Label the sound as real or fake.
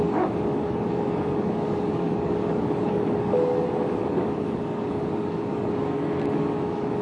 fake